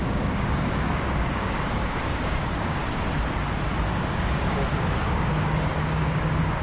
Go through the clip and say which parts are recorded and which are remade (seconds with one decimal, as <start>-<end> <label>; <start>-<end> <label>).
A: 0.0-2.8 remade; 2.8-3.9 recorded; 3.9-6.6 remade